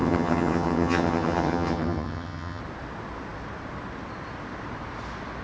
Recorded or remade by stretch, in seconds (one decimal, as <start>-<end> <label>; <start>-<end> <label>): 0.0-2.6 remade; 2.6-5.4 recorded